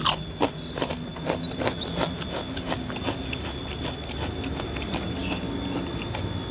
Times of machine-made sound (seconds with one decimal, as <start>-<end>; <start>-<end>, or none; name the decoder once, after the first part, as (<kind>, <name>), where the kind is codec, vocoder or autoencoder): none